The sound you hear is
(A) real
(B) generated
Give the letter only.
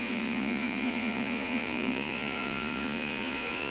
B